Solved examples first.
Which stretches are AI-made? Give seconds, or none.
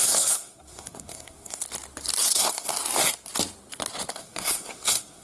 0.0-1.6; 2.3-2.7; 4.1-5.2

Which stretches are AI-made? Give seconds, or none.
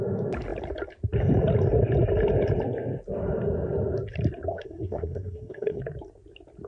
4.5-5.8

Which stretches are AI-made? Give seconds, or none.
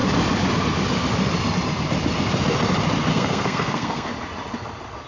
3.1-4.1